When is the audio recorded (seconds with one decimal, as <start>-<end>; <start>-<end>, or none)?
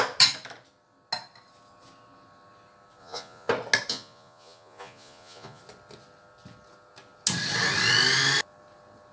0.0-3.0; 3.5-3.9; 5.6-9.1